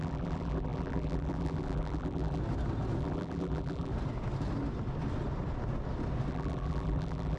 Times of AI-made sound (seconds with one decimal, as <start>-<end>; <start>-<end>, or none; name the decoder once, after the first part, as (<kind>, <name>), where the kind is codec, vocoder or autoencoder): 0.0-2.4 (vocoder, BigVGAN v2); 3.0-3.9; 6.3-7.4